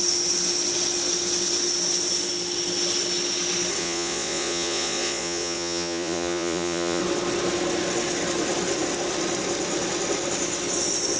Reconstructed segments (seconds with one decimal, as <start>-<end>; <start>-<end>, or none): 3.8-7.0